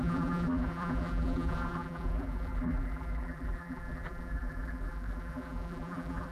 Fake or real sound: fake